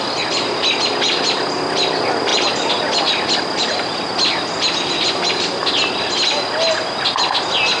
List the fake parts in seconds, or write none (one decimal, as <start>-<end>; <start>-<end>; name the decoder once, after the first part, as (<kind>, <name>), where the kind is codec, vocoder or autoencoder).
none

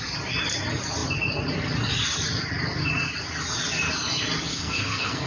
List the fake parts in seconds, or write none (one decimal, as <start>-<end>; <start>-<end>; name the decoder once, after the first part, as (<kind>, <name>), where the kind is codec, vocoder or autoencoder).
4.5-5.3 (codec, SNAC)

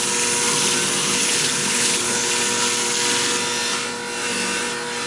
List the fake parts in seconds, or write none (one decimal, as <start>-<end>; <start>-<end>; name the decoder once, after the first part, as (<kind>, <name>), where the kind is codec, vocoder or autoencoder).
1.0-2.3 (codec, HILCodec)